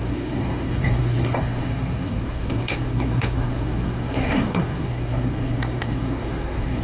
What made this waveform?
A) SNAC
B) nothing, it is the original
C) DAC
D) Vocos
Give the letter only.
A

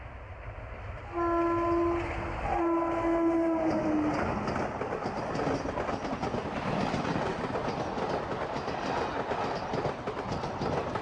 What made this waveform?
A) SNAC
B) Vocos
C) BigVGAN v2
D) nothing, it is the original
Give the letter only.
D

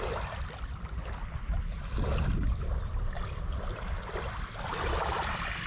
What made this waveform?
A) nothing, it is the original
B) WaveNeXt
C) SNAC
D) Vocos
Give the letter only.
A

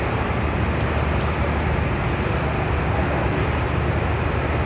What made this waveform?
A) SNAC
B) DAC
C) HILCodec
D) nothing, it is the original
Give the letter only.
D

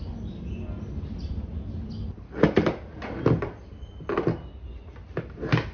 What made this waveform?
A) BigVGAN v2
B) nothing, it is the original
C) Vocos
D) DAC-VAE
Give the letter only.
B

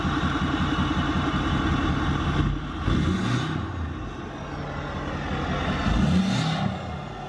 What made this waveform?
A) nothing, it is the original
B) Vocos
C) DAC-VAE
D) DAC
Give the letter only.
A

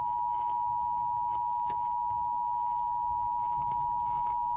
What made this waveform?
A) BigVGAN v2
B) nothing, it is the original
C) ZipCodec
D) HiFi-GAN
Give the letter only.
B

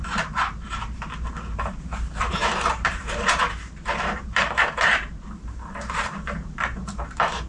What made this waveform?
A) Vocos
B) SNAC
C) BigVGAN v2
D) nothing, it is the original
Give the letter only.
C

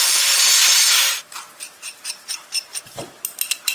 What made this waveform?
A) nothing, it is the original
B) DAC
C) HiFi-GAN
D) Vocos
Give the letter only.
A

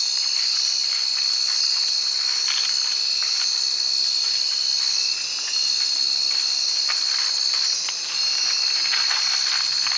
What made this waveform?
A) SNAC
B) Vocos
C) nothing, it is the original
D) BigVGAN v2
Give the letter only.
D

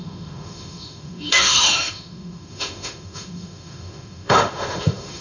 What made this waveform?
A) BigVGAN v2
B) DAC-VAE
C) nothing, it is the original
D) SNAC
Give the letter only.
B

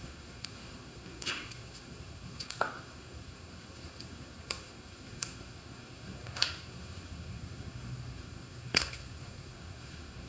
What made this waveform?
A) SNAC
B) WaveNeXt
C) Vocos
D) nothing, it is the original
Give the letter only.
A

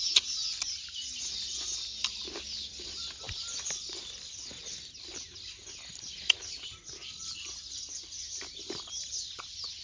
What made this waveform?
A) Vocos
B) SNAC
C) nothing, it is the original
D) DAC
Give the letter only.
C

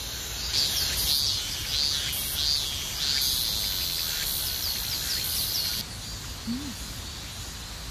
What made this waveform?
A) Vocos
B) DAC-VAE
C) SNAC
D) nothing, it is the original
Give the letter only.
D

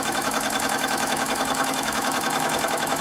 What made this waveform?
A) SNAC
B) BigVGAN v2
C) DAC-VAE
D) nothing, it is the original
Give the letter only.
C